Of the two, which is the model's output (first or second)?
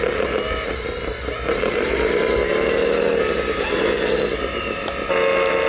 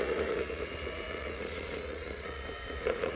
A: second